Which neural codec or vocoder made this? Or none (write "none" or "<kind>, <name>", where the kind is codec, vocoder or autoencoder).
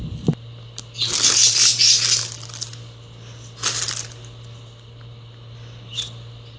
none